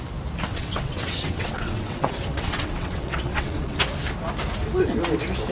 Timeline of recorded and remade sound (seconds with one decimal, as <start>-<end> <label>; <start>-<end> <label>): 0.0-0.5 recorded; 0.5-3.8 remade; 3.8-5.5 recorded